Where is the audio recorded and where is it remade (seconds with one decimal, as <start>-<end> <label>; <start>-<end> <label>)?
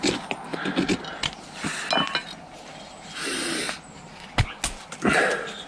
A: 0.0-5.7 recorded